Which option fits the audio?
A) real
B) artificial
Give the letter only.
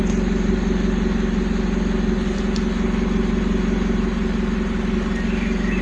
A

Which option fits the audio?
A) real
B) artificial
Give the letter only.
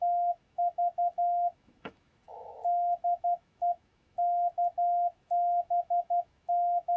B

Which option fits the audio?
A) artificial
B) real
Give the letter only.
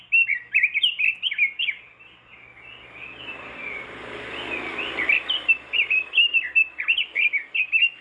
B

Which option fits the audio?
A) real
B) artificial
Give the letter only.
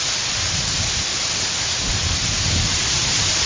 A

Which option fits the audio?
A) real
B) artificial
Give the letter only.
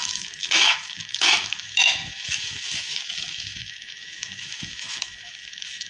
B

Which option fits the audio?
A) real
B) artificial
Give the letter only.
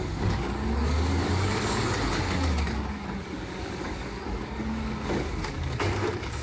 B